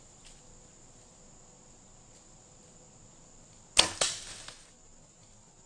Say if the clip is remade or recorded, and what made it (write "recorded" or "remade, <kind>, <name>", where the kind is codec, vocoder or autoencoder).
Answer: recorded